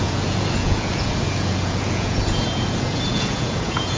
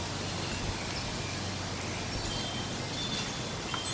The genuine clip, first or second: second